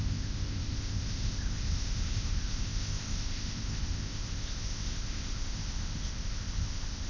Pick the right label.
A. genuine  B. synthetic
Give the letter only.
B